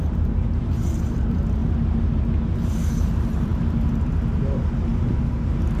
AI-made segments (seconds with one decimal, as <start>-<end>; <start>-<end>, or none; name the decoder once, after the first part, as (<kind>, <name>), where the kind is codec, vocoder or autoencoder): 0.0-1.6 (vocoder, BigVGAN v2); 2.1-5.8